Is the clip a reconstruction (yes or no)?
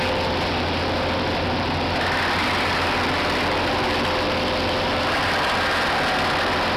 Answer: no